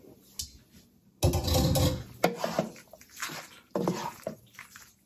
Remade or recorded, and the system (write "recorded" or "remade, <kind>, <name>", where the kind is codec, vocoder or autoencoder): recorded